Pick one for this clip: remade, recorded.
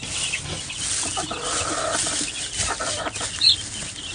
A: recorded